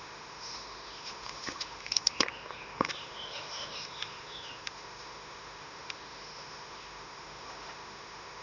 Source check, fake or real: fake